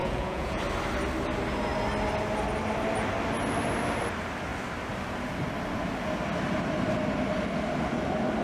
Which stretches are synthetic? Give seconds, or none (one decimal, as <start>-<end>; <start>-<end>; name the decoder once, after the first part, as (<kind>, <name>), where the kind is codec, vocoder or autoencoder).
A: 0.0-0.6 (vocoder, Vocos)